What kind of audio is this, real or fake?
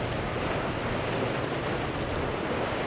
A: real